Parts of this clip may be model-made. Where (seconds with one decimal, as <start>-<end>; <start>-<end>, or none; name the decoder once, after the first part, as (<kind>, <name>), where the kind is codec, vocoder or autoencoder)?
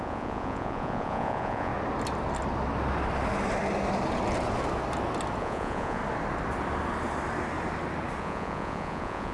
0.0-1.7 (vocoder, Vocos); 5.4-6.0; 8.2-9.3